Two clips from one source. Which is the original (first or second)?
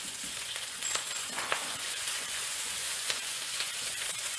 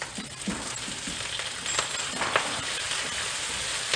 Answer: second